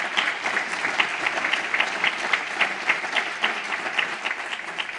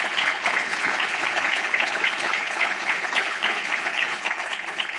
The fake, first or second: second